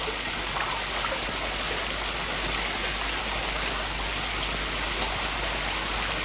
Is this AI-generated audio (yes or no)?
no